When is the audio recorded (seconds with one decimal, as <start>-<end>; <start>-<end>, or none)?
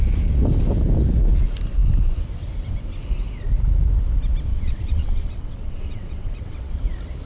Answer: 0.0-4.5; 6.8-7.3